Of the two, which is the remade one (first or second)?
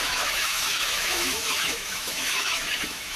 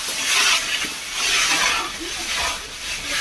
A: first